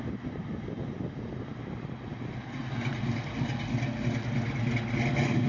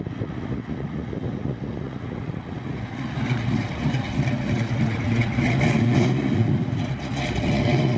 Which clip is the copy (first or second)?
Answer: second